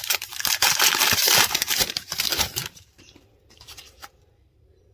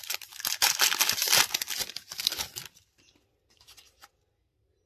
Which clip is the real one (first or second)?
second